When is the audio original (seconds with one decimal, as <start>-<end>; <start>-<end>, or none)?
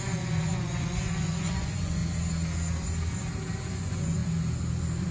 2.0-3.7; 4.2-5.1